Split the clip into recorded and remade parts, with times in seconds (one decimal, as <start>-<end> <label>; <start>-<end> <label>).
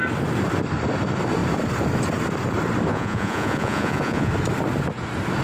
0.0-2.9 recorded; 2.9-4.3 remade; 4.3-5.4 recorded